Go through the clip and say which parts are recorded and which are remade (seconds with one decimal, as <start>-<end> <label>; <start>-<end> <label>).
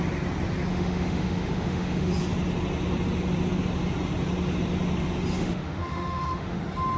0.0-0.7 recorded; 0.7-2.1 remade; 2.1-5.4 recorded; 5.4-6.6 remade; 6.6-7.0 recorded